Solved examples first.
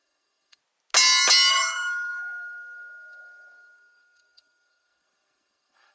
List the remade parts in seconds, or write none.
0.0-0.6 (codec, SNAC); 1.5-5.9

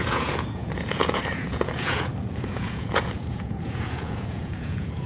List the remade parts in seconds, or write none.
0.0-5.1 (vocoder, Vocos)